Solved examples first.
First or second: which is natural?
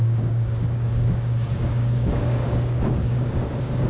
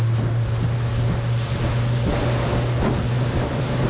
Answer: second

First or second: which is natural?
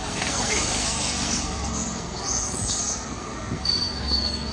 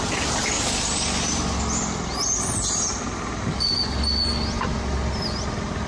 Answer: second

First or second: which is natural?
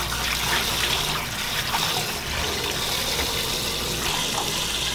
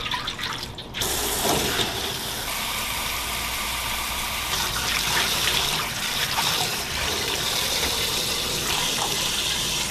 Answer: first